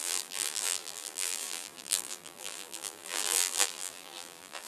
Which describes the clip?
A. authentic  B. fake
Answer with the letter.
B